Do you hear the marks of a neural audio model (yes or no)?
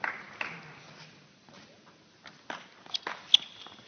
no